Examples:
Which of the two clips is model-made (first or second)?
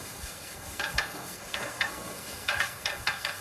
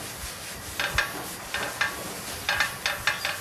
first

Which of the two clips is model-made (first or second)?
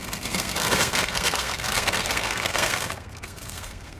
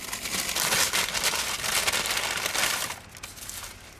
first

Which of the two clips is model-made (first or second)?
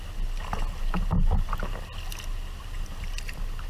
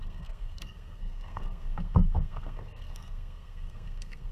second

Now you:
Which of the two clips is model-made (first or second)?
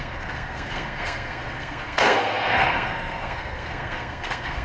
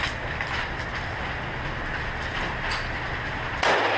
first